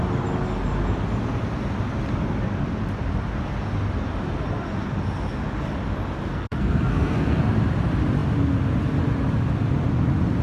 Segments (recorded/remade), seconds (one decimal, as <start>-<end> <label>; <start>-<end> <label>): 0.0-6.3 recorded; 6.3-7.4 remade; 7.4-10.4 recorded